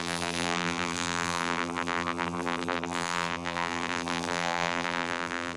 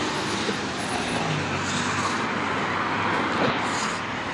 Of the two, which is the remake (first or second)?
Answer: first